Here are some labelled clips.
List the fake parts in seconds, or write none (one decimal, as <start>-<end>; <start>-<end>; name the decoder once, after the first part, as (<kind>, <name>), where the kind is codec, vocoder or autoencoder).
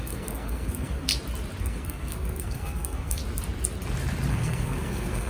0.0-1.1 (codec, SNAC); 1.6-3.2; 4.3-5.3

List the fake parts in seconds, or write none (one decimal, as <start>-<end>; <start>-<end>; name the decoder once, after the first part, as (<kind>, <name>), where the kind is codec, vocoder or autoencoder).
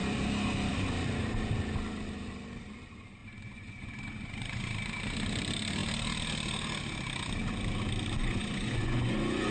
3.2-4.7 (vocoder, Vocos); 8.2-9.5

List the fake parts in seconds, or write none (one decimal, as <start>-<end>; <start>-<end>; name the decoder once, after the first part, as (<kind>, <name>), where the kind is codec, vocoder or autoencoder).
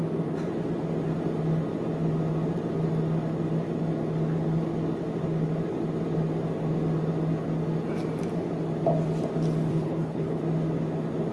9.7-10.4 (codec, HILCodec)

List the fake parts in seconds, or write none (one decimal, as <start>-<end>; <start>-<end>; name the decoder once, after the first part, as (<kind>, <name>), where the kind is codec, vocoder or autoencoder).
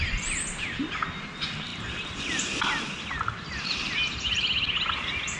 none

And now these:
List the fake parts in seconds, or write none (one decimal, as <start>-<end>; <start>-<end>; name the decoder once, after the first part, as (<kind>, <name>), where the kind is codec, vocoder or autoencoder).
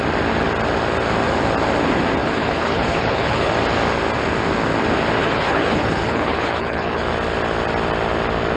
2.2-3.5 (codec, HILCodec); 5.2-7.1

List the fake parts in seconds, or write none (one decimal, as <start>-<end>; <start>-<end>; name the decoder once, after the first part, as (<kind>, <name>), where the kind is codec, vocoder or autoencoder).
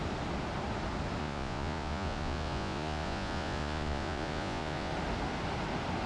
1.2-4.9 (vocoder, Vocos)